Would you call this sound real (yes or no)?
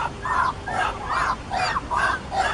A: yes